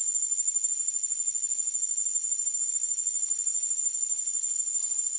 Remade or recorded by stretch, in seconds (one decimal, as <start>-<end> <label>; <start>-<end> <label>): 0.0-5.2 recorded